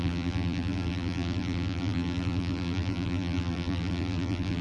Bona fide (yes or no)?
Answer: no